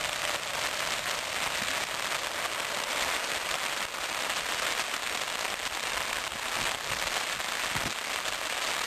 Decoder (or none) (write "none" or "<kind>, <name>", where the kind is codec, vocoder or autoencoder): none